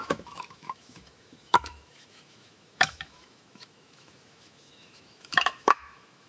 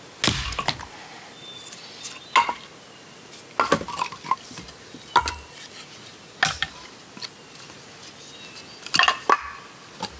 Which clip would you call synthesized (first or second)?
first